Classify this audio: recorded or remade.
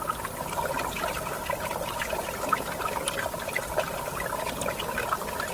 recorded